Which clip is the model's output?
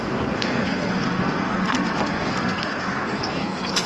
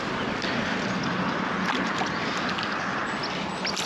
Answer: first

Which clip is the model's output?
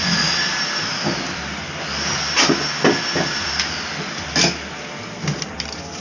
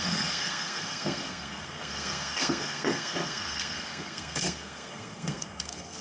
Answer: second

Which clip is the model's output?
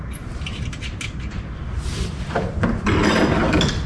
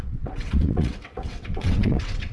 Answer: second